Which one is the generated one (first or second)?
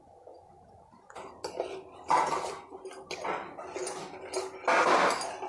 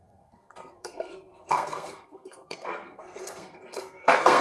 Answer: second